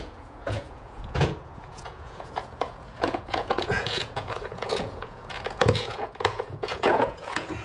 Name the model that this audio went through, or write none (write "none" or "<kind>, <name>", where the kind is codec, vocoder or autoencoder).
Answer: vocoder, Vocos